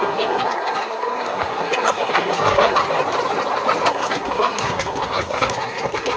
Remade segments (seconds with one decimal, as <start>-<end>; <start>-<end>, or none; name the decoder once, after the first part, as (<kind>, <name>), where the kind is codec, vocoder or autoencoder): 0.0-2.8 (codec, SNAC); 3.9-6.2